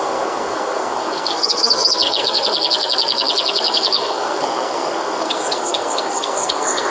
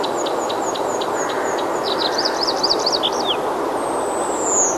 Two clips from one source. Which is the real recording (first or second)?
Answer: second